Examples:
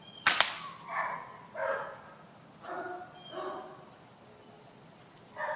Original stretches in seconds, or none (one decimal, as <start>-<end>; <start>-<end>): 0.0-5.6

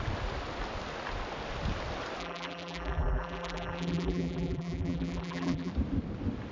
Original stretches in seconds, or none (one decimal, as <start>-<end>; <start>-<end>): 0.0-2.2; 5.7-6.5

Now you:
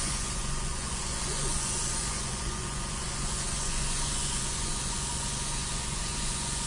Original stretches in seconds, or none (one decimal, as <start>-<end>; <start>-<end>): none